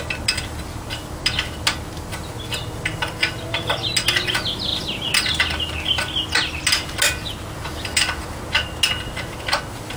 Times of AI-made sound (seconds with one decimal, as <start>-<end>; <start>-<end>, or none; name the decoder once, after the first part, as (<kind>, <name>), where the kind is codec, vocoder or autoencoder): none